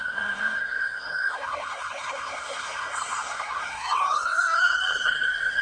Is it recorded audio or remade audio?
remade